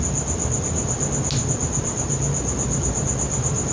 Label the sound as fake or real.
real